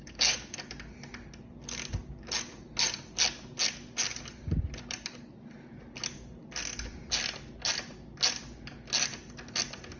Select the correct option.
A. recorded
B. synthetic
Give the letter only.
A